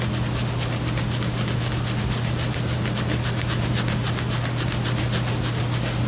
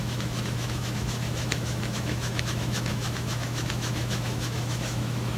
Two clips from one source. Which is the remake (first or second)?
second